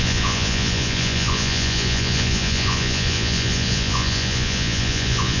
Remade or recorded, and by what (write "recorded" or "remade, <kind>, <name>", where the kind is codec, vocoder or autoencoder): remade, vocoder, Vocos